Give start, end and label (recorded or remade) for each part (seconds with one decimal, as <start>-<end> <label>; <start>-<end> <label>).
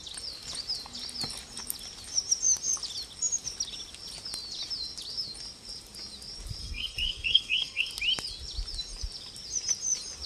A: 0.0-6.6 recorded; 6.6-7.9 remade; 7.9-10.3 recorded